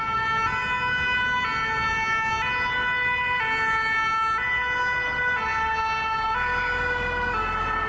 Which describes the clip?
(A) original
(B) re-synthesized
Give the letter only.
A